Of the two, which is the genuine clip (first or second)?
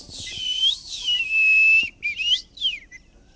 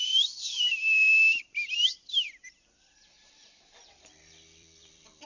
first